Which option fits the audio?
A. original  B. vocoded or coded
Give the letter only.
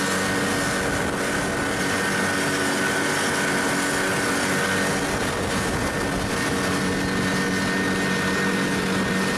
A